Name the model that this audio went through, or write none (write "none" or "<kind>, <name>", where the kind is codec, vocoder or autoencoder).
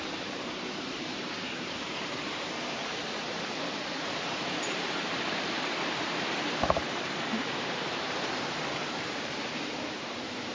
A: vocoder, BigVGAN v2